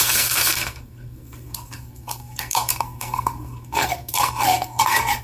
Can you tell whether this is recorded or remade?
remade